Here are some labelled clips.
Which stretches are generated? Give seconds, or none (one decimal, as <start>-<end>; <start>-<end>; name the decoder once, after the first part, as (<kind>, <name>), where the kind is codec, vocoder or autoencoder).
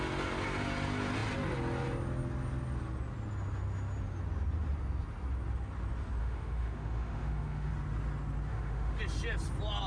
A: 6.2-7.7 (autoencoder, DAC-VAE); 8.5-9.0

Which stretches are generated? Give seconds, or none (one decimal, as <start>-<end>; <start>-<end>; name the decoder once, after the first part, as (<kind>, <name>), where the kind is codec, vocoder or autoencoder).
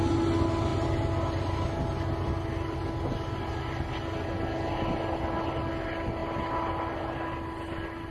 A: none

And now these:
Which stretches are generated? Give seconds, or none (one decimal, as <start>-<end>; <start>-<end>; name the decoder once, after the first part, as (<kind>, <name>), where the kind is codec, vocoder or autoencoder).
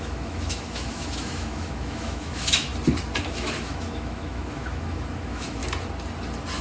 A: 0.0-2.7 (autoencoder, DAC-VAE); 3.2-5.6